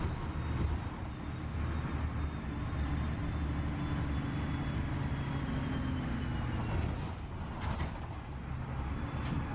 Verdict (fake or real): real